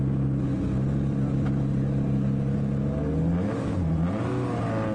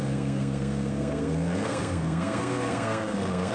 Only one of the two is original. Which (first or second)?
first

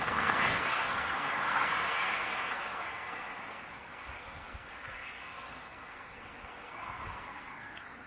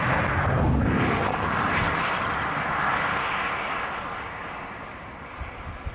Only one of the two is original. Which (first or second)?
second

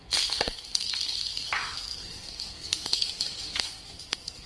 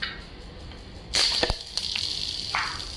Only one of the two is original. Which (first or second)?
second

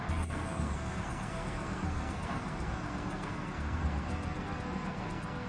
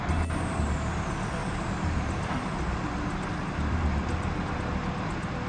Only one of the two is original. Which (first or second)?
second